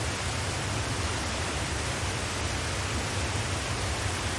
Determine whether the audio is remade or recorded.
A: recorded